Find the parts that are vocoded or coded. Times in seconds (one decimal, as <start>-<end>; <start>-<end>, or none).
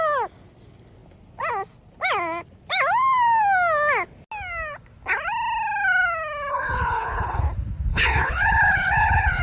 6.5-7.4; 7.9-9.4